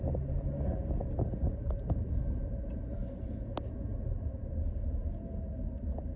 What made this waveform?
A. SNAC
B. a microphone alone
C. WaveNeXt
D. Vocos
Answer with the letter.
B